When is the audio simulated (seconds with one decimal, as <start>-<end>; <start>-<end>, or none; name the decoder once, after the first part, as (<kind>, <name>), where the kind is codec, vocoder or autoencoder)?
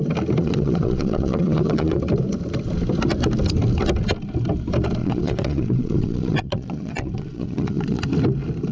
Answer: 0.4-2.0 (vocoder, Vocos); 5.0-8.0